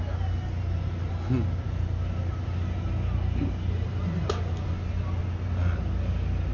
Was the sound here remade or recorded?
recorded